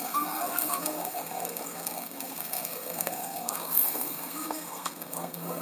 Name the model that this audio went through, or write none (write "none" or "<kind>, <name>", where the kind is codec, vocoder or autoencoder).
codec, SNAC